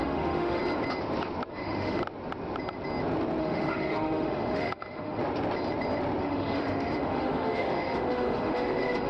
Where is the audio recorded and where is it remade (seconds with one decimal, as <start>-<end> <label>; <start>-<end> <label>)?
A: 0.0-0.6 remade; 0.6-1.5 recorded; 1.5-2.0 remade; 2.0-3.4 recorded; 3.4-5.2 remade; 5.2-6.2 recorded; 6.2-9.1 remade